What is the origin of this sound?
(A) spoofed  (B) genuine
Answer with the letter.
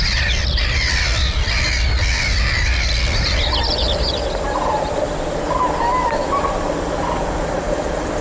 B